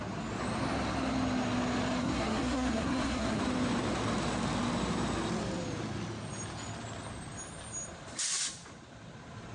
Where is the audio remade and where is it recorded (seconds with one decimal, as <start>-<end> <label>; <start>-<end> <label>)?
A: 0.0-2.0 recorded; 2.0-3.4 remade; 3.4-9.5 recorded

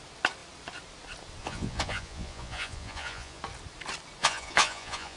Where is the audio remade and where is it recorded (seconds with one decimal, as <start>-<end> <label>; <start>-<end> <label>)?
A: 0.0-1.4 recorded; 1.4-3.4 remade; 3.4-4.2 recorded; 4.2-5.2 remade